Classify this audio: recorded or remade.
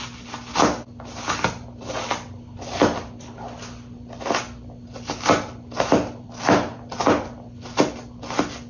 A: recorded